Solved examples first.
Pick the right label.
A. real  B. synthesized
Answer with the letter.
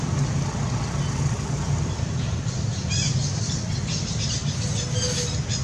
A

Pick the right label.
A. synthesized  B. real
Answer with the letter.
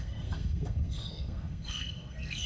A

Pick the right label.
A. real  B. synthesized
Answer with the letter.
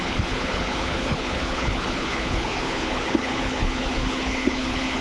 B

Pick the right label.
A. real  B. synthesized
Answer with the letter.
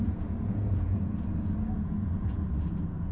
B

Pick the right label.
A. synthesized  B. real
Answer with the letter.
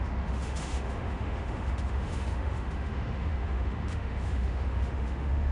A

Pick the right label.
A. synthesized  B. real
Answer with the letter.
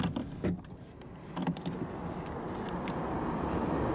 B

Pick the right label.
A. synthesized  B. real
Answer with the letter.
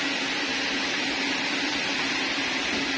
B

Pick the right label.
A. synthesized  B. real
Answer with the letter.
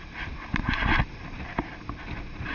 B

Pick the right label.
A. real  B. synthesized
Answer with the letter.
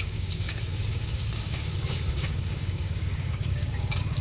B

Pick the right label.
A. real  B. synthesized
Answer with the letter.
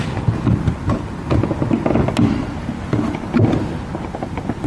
A